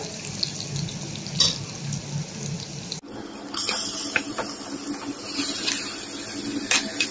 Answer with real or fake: real